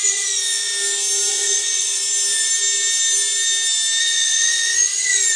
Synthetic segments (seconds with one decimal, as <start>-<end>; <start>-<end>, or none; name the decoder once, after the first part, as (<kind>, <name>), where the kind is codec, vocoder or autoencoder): 0.0-0.7 (vocoder, Vocos); 1.3-2.0; 4.0-5.4